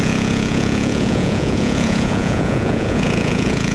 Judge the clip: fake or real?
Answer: fake